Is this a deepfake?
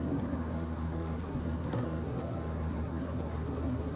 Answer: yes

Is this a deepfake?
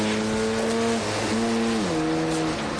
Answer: no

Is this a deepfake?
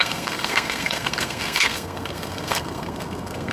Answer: yes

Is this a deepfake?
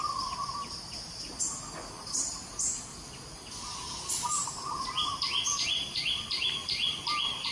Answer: no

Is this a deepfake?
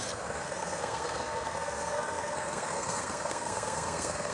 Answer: yes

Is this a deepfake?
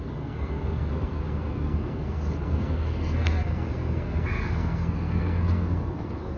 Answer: yes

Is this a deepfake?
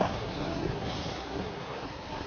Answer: yes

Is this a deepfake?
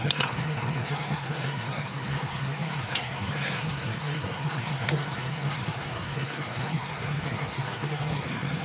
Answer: yes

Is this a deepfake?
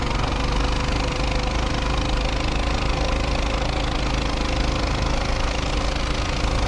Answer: no